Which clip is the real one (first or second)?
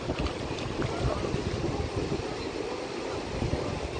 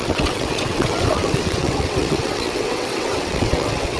first